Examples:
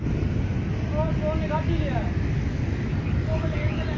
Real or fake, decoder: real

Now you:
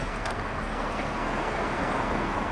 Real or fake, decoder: fake, codec, SNAC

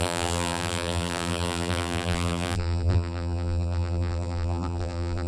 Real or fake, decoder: fake, vocoder, BigVGAN v2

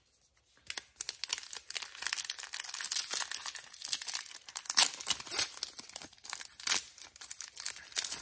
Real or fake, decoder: real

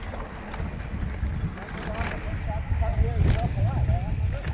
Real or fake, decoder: real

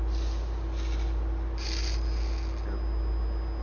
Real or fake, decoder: real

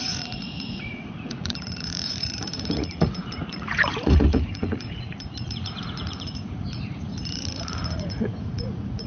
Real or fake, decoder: fake, vocoder, Vocos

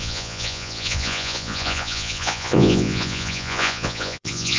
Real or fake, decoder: fake, vocoder, Vocos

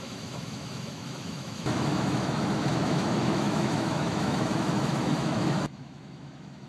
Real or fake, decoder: fake, autoencoder, DAC-VAE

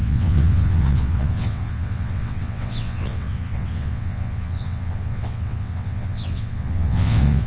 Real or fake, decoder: fake, vocoder, WaveNeXt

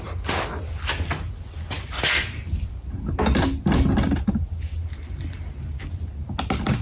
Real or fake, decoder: real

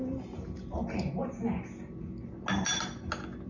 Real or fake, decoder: real